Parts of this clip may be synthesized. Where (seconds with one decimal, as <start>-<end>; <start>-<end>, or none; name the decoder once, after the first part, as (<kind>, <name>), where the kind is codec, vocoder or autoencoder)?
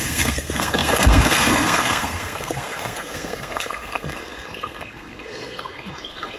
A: 0.0-6.4 (codec, SNAC)